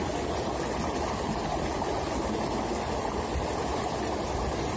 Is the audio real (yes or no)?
yes